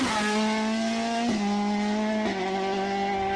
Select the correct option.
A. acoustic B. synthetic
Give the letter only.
A